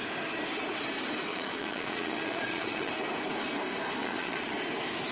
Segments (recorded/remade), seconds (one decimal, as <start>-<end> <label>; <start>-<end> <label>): 0.0-1.3 recorded; 1.3-2.9 remade; 2.9-4.0 recorded; 4.0-4.5 remade; 4.5-5.1 recorded